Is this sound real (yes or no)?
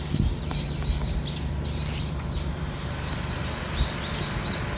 yes